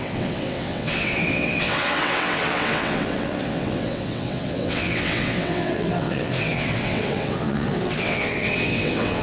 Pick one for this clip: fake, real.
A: fake